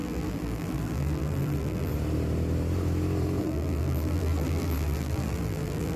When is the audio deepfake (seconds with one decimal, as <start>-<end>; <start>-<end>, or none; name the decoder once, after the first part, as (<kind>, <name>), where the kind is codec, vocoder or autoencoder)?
0.0-1.9 (vocoder, BigVGAN v2); 3.4-6.0